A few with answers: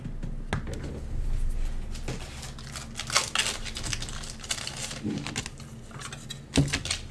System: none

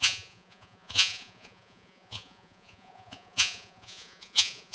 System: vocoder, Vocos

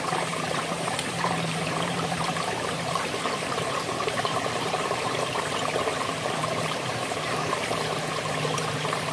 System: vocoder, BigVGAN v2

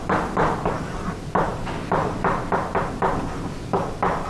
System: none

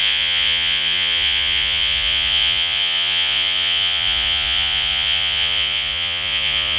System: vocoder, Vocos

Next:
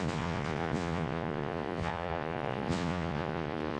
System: vocoder, Vocos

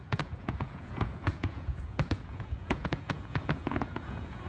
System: vocoder, Vocos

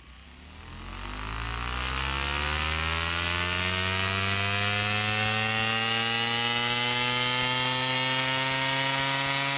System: none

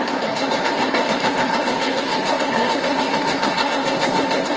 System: codec, SNAC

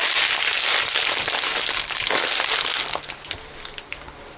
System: none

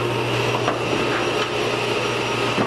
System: none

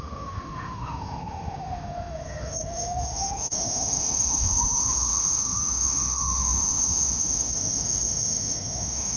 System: autoencoder, DAC-VAE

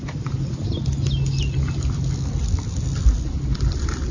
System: none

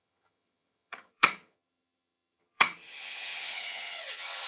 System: vocoder, HiFi-GAN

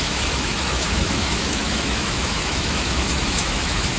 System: autoencoder, DAC-VAE